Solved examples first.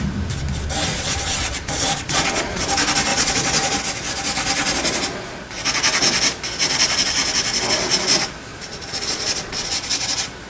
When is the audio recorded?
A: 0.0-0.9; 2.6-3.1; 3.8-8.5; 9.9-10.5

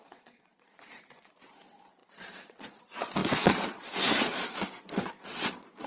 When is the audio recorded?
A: none